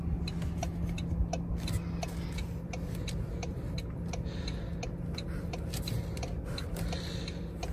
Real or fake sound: real